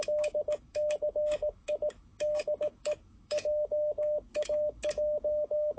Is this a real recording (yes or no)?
no